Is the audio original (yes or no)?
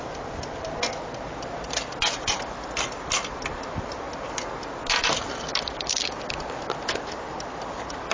yes